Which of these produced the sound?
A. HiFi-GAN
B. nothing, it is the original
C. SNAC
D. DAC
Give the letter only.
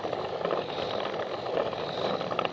B